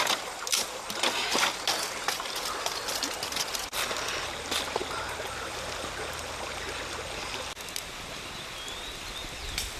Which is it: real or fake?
real